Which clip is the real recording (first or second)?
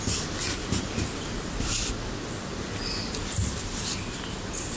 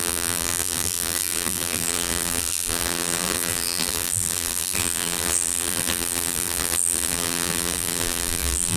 first